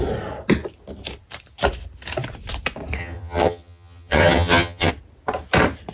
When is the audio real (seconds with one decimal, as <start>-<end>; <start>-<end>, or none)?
0.0-3.0; 4.9-5.9